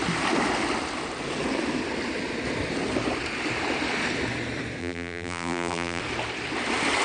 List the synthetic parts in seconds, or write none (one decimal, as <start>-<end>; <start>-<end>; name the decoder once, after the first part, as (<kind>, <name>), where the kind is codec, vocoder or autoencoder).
4.8-6.0 (vocoder, BigVGAN v2)